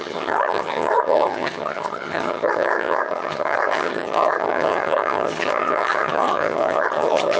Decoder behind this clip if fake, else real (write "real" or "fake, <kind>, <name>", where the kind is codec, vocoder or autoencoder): fake, vocoder, HiFi-GAN